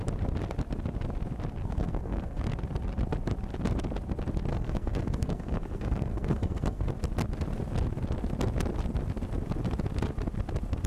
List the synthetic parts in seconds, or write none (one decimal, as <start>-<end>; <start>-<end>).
1.6-2.4; 4.5-6.9